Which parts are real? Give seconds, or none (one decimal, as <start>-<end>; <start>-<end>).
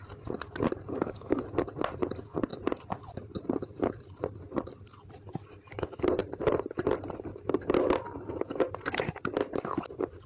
0.0-0.9; 1.4-10.3